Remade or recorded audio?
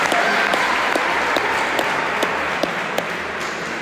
recorded